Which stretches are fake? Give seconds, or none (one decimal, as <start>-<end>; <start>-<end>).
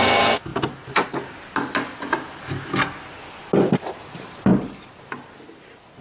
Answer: 4.5-6.0